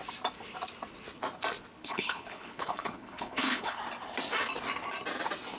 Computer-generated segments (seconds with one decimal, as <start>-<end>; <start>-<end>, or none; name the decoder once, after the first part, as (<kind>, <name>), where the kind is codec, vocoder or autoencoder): 1.8-3.8 (codec, HILCodec)